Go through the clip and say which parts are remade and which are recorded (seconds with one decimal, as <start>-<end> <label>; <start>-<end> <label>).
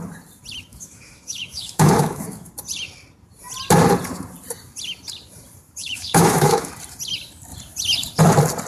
0.0-0.7 recorded; 0.7-2.5 remade; 2.5-5.8 recorded; 5.8-6.7 remade; 6.7-8.7 recorded